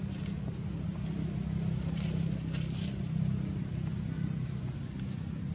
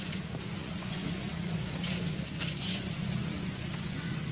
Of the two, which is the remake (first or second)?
second